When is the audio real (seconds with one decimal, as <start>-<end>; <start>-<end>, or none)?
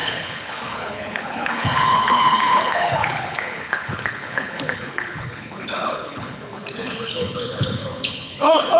none